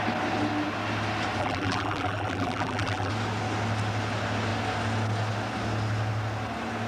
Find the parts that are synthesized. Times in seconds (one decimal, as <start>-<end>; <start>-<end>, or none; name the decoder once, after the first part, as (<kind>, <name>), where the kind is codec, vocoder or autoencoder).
1.4-3.1 (vocoder, BigVGAN v2)

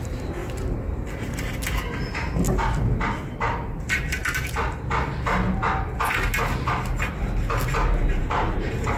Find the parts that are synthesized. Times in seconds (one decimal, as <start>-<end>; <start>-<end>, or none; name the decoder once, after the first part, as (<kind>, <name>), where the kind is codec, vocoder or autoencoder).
0.0-0.4 (vocoder, BigVGAN v2); 3.4-4.2; 8.0-9.0

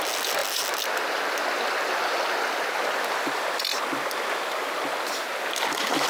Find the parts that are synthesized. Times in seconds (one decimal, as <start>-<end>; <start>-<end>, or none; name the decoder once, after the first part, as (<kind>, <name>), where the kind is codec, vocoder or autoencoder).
none

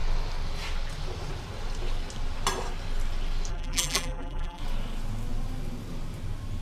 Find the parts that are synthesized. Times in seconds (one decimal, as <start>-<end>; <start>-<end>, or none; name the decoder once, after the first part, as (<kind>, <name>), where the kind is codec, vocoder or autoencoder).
3.5-4.6 (vocoder, BigVGAN v2)

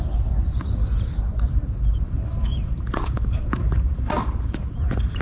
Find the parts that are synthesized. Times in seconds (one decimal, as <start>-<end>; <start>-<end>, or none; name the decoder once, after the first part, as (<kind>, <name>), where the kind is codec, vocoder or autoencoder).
1.9-5.2 (vocoder, BigVGAN v2)

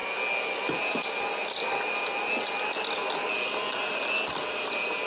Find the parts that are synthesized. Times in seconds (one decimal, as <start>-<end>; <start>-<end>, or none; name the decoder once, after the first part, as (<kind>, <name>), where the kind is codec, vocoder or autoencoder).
none